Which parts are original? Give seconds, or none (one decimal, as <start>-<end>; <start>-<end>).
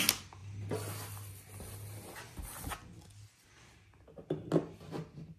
0.0-5.4